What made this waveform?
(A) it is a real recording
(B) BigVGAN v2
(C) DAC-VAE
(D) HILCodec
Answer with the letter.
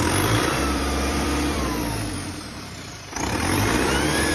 B